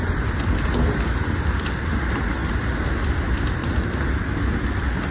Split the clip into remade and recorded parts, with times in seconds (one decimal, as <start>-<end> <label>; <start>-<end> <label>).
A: 0.0-5.1 recorded